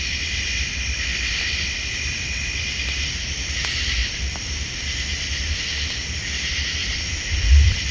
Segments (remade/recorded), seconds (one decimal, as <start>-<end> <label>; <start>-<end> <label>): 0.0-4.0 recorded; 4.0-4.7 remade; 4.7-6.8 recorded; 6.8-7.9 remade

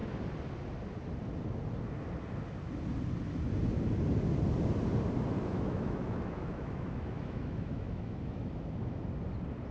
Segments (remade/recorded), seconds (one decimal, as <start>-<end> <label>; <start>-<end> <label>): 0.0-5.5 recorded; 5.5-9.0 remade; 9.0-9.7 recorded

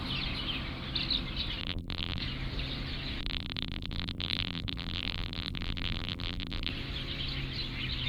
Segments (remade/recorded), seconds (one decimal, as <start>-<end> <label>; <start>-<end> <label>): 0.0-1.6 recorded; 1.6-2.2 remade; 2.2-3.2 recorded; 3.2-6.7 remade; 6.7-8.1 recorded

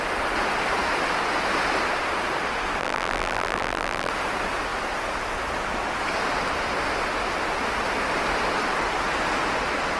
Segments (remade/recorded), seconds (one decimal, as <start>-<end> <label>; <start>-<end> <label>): 0.0-2.8 recorded; 2.8-4.1 remade; 4.1-10.0 recorded

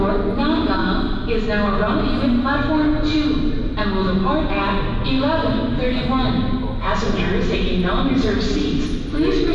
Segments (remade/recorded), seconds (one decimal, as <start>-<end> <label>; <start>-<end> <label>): 0.0-9.5 recorded